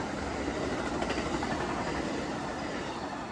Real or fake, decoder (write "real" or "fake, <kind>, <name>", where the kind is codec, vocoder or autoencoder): real